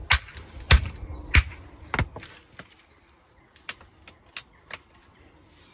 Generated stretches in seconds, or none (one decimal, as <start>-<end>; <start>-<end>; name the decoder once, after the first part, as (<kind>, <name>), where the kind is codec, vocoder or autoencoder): none